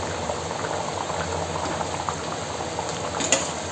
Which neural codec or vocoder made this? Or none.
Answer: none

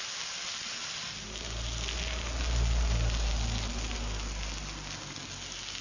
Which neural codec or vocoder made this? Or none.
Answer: none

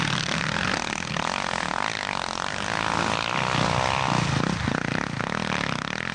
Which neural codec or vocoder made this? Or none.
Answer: none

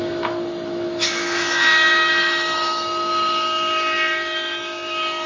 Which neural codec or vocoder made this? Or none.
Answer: autoencoder, DAC-VAE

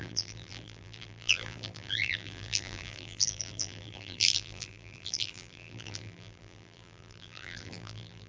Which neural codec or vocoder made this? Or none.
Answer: vocoder, BigVGAN v2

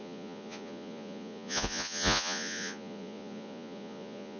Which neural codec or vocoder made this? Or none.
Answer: vocoder, Vocos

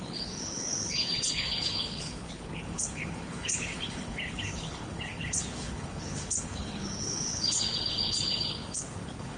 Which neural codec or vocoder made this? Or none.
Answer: codec, HILCodec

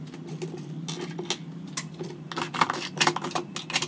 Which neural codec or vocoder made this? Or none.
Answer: none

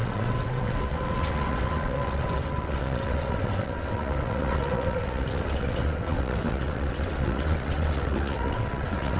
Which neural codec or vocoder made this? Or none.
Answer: vocoder, WaveNeXt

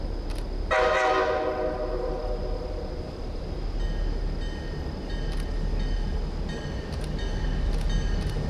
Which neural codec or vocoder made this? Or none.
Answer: none